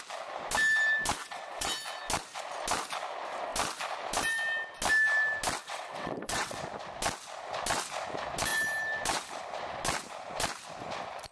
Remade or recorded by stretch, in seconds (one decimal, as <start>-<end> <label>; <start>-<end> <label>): 0.0-1.2 recorded; 1.2-1.7 remade; 1.7-5.6 recorded; 5.6-6.6 remade; 6.6-11.3 recorded

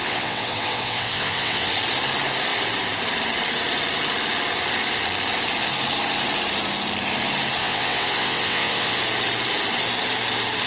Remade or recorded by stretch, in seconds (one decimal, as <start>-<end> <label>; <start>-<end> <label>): 0.0-1.7 remade; 1.7-7.6 recorded; 7.6-9.0 remade; 9.0-10.7 recorded

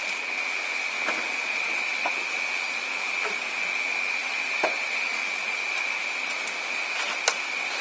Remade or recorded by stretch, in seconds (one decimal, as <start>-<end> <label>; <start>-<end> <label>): 0.0-1.4 recorded; 1.4-2.1 remade; 2.1-4.2 recorded; 4.2-5.1 remade; 5.1-7.8 recorded

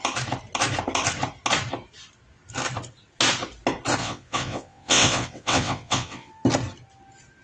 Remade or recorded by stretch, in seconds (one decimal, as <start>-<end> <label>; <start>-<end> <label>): 0.0-4.0 recorded; 4.0-6.3 remade; 6.3-7.4 recorded

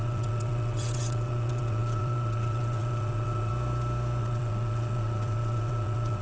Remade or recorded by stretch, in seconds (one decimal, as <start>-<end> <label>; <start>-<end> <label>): 0.0-3.5 remade; 3.5-4.2 recorded; 4.2-6.2 remade

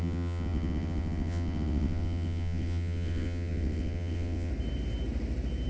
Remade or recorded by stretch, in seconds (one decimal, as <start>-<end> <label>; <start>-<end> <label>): 0.0-4.5 remade; 4.5-5.7 recorded

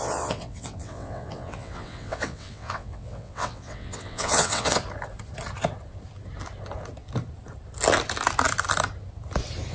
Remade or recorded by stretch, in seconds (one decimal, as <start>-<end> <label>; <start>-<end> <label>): 0.0-4.8 remade; 4.8-9.7 recorded